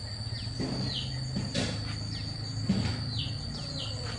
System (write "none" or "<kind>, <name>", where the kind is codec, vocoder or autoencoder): none